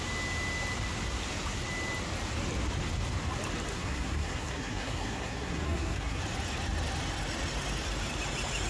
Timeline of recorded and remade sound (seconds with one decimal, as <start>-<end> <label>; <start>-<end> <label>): 0.0-3.7 recorded; 3.7-6.2 remade; 6.2-8.7 recorded